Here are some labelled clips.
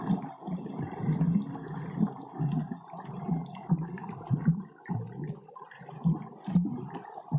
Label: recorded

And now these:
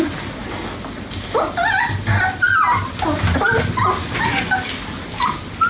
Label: recorded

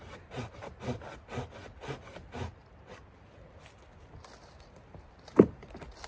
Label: recorded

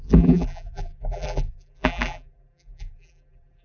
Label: remade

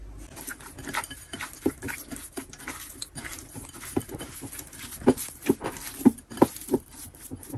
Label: recorded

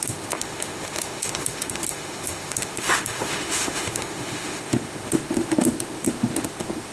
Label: remade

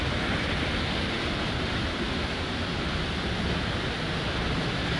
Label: recorded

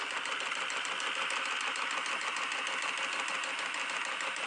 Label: recorded